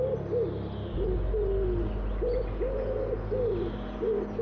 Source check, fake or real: real